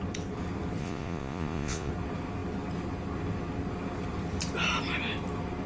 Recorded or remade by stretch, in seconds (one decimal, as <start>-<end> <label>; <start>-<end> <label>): 0.0-0.8 recorded; 0.8-1.9 remade; 1.9-5.7 recorded